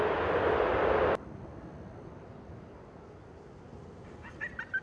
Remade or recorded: recorded